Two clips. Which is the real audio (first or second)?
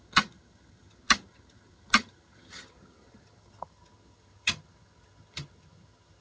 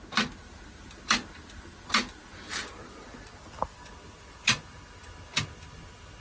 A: second